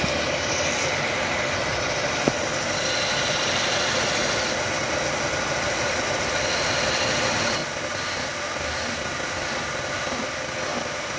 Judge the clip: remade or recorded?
recorded